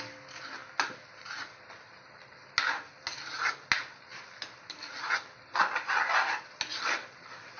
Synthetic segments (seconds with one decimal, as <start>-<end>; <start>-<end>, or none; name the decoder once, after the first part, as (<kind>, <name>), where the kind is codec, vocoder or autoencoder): none